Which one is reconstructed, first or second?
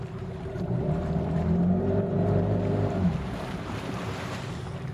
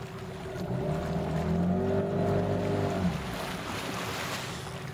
first